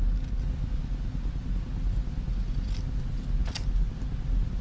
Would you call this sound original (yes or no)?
yes